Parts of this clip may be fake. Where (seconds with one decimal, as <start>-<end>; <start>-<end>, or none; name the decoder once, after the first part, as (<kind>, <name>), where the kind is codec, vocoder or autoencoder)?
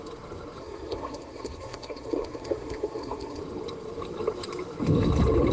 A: 0.6-3.4 (codec, SNAC)